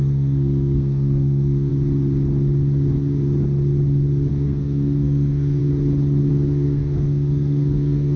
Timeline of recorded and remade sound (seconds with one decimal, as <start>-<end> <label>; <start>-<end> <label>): 0.0-1.7 remade; 1.7-4.3 recorded; 4.3-5.6 remade; 5.6-6.3 recorded; 6.3-8.2 remade